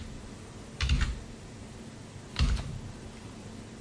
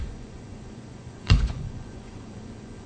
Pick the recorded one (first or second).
first